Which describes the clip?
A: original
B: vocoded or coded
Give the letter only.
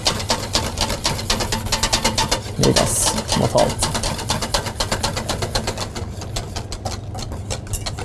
A